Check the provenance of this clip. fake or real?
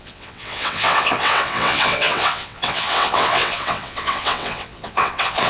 fake